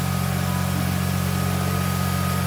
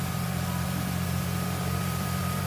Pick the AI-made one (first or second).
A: second